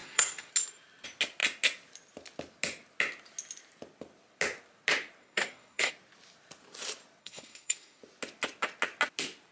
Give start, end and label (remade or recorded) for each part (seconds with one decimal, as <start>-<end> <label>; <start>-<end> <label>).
0.0-0.5 remade; 0.5-5.2 recorded; 5.2-5.9 remade; 5.9-7.2 recorded; 7.2-8.0 remade; 8.0-9.5 recorded